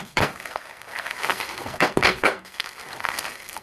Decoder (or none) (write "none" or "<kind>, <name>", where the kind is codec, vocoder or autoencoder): codec, SNAC